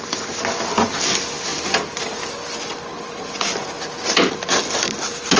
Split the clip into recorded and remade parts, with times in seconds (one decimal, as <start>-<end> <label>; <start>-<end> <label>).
0.0-5.4 recorded